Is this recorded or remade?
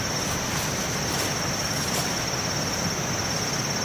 recorded